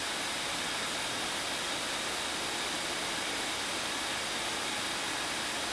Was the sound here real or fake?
real